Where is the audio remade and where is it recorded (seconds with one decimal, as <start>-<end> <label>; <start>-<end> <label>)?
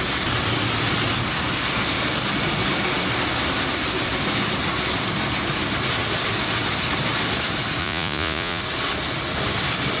0.0-7.8 recorded; 7.8-8.6 remade; 8.6-10.0 recorded